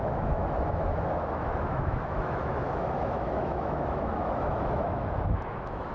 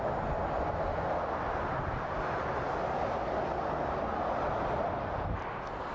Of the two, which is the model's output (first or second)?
first